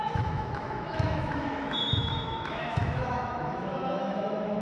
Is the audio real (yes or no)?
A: no